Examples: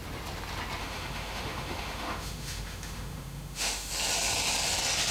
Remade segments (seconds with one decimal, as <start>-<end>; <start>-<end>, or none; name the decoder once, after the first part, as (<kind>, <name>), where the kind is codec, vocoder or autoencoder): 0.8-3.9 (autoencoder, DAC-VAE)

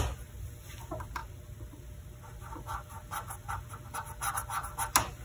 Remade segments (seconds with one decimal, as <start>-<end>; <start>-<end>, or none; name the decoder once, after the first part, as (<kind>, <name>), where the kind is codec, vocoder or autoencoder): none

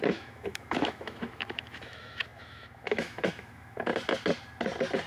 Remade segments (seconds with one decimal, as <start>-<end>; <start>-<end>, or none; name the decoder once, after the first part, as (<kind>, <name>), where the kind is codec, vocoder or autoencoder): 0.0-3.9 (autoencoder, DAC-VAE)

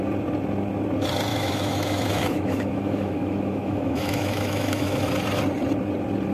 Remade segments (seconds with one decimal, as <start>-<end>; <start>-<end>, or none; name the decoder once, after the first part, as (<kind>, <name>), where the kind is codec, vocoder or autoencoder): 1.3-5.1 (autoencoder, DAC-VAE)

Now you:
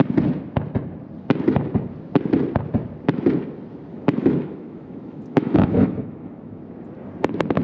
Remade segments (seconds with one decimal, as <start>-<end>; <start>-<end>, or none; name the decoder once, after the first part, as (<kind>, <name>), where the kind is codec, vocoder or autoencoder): 3.9-6.6 (autoencoder, DAC-VAE)